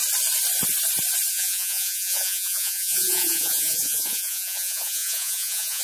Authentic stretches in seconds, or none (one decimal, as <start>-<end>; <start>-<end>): 0.0-1.3